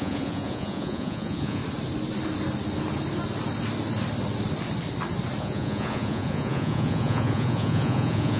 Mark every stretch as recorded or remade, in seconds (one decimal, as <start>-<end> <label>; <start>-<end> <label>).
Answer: 0.0-1.6 remade; 1.6-5.4 recorded; 5.4-8.4 remade